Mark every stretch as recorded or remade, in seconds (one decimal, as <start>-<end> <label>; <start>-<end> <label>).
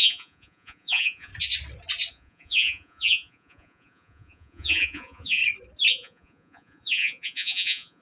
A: 0.0-1.3 remade; 1.3-2.1 recorded; 2.1-5.4 remade; 5.4-5.9 recorded; 5.9-8.0 remade